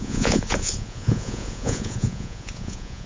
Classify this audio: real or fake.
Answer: fake